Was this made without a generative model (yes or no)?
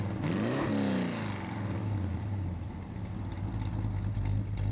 yes